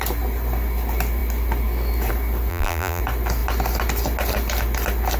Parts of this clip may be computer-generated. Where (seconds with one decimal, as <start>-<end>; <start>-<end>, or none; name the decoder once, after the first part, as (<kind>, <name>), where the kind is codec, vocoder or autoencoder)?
2.5-3.0 (vocoder, BigVGAN v2)

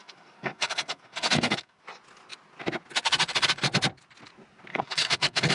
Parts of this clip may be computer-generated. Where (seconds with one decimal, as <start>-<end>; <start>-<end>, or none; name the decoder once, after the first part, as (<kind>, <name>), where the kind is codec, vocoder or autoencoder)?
0.0-1.8 (codec, SNAC); 4.7-5.5

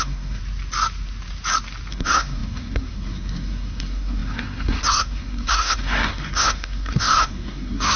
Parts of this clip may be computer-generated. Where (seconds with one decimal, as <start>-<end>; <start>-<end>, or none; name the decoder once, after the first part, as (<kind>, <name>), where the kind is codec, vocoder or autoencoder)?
0.0-0.4 (codec, SNAC); 1.9-8.0

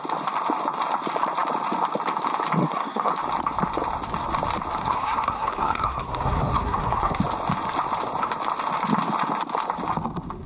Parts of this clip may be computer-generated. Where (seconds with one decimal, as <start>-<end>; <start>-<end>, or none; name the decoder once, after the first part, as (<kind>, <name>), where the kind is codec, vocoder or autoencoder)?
2.6-3.1 (codec, SNAC); 4.8-7.2

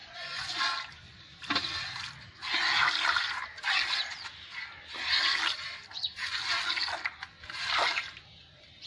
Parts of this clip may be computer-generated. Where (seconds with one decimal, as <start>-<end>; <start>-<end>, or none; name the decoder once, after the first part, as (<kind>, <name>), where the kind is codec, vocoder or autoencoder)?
0.0-0.6 (vocoder, Vocos)

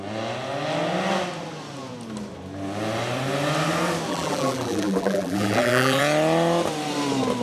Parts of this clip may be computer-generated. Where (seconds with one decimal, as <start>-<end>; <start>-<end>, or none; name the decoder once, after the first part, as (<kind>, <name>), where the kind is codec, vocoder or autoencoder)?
4.1-6.0 (vocoder, BigVGAN v2)

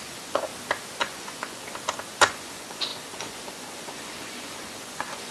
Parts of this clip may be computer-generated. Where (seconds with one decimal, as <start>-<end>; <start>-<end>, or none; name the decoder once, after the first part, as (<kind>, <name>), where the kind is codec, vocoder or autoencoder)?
0.0-0.5 (vocoder, Vocos); 1.0-1.6; 2.1-5.3

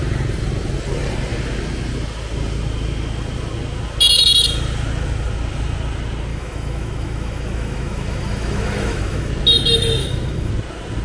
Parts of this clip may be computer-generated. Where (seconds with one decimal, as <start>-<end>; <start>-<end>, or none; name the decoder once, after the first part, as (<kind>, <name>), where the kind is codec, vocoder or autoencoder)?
6.3-9.3 (autoencoder, DAC-VAE); 10.0-10.5